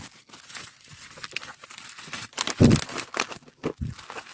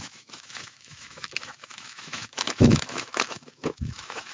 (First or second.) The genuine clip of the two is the first